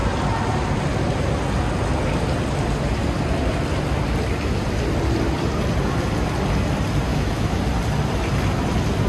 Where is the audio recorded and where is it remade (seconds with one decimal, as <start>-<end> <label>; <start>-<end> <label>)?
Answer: 0.0-7.1 recorded; 7.1-7.6 remade; 7.6-9.1 recorded